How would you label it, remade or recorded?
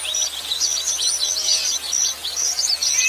recorded